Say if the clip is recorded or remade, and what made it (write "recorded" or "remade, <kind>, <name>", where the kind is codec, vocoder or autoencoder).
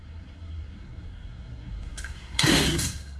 remade, codec, SNAC